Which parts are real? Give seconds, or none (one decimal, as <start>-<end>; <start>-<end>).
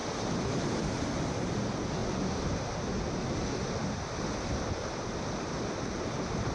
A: 0.8-6.5